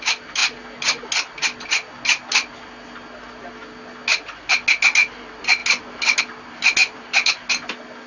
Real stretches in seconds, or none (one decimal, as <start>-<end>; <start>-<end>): 0.0-6.8; 7.3-8.1